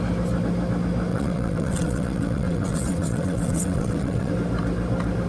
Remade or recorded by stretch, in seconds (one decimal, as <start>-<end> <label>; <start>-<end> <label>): 0.0-1.1 recorded; 1.1-4.3 remade; 4.3-5.3 recorded